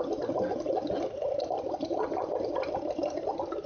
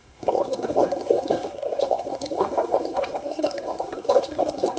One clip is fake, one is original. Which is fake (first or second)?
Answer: second